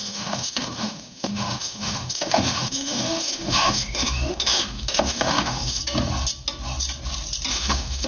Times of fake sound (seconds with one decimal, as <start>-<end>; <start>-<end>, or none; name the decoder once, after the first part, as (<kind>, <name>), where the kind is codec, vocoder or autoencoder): 0.0-5.8 (autoencoder, DAC-VAE); 7.5-8.1